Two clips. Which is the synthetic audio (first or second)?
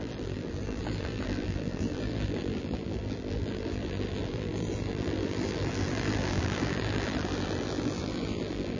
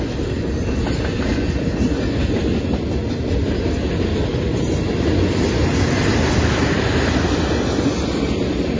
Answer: first